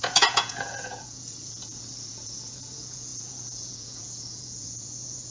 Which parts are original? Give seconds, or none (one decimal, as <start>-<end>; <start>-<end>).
none

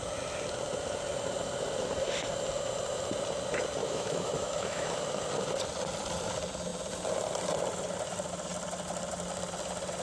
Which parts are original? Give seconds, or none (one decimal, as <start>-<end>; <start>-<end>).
0.0-3.8; 4.9-10.0